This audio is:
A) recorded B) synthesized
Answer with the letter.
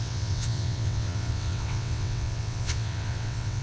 B